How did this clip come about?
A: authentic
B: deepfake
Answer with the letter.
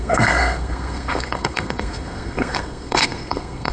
B